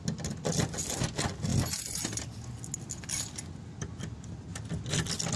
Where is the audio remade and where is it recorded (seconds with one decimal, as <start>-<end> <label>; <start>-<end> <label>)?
0.0-4.5 recorded; 4.5-5.4 remade